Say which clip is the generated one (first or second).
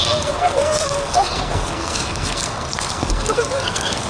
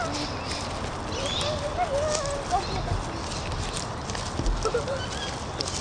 first